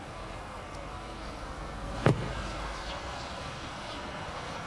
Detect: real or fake fake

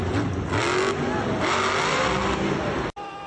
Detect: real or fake real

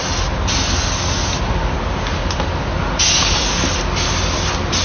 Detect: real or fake real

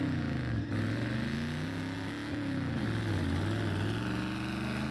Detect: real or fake real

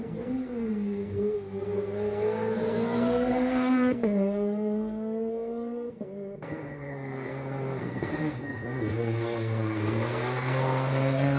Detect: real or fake fake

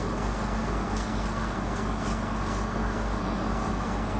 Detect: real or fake fake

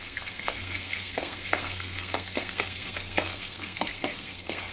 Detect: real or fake fake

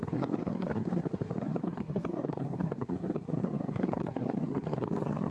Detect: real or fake fake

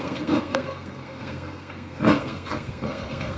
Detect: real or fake fake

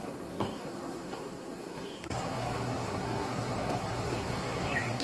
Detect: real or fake fake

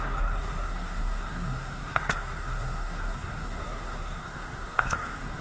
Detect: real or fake fake